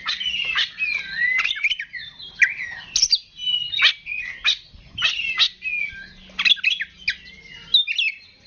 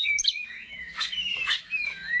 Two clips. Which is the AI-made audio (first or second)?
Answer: second